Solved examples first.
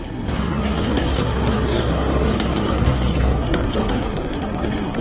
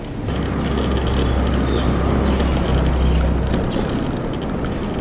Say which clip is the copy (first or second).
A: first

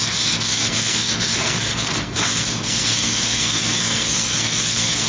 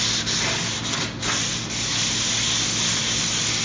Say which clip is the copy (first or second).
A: first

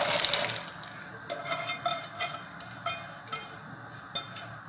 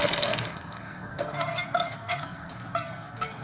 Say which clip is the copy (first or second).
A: second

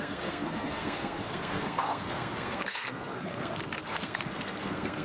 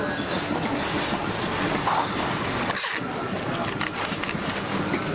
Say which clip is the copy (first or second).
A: first